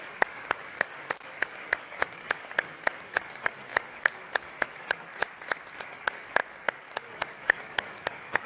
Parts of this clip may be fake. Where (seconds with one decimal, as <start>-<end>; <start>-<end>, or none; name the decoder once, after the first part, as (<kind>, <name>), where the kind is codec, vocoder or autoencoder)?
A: 0.0-5.1 (codec, DAC); 5.8-8.5